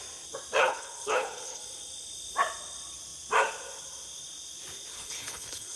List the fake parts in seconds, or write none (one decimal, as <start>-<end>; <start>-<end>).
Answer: 0.6-1.6; 4.9-5.8